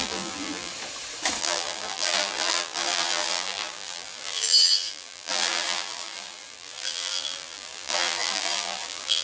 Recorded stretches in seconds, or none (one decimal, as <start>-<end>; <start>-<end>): 0.7-1.4